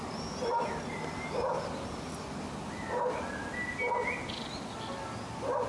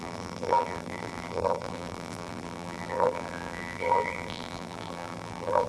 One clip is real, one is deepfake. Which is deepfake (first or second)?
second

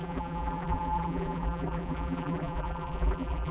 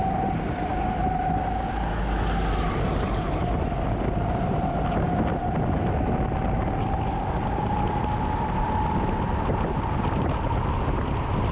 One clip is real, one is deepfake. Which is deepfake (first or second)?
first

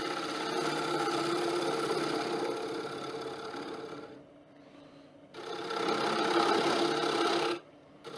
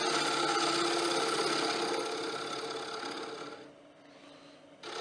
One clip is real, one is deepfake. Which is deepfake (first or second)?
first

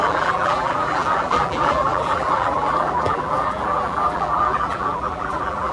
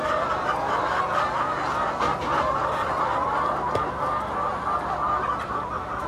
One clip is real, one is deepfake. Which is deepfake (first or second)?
first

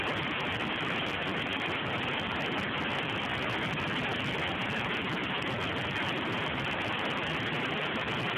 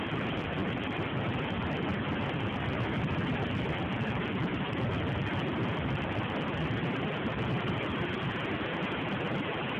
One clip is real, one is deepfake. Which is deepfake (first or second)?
second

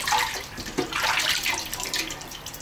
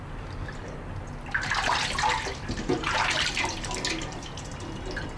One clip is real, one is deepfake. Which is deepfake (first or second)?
first